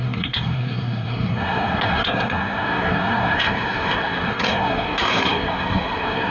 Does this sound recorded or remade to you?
remade